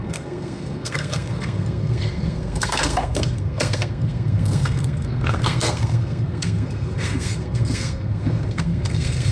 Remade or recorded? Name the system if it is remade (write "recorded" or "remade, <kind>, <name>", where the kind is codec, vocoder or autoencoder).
remade, codec, SNAC